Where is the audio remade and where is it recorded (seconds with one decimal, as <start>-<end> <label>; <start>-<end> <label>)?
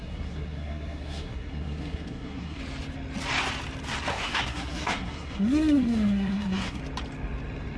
0.0-2.6 remade; 2.6-4.1 recorded; 4.1-6.8 remade; 6.8-7.8 recorded